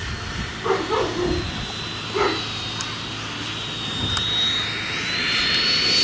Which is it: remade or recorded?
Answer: recorded